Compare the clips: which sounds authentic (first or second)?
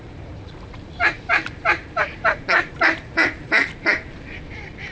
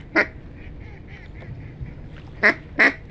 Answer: second